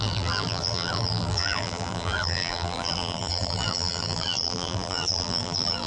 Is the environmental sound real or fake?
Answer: fake